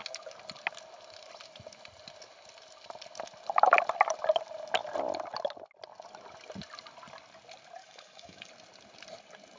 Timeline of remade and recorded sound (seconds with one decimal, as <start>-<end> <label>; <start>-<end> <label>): 0.0-7.8 recorded; 7.8-8.5 remade; 8.5-9.6 recorded